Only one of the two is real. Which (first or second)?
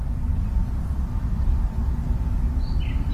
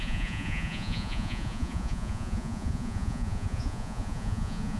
first